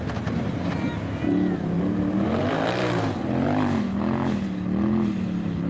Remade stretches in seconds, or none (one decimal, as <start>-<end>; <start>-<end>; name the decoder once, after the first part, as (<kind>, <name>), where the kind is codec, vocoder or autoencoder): none